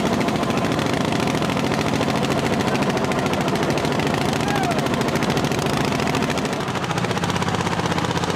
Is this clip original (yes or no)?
yes